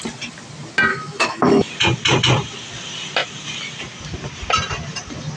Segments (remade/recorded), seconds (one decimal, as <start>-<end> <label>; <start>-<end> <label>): 0.0-0.9 recorded; 0.9-1.7 remade; 1.7-5.4 recorded